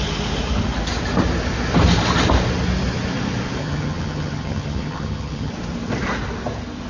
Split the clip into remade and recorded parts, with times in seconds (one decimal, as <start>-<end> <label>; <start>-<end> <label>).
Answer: 0.0-3.6 recorded; 3.6-5.5 remade; 5.5-6.9 recorded